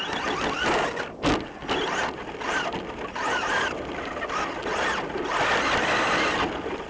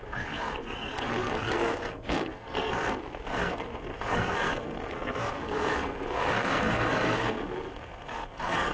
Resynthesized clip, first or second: second